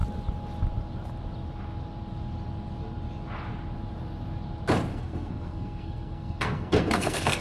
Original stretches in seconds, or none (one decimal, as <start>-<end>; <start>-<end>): 0.0-4.9